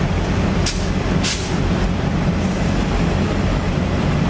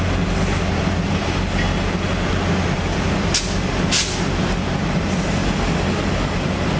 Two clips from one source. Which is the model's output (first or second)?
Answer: first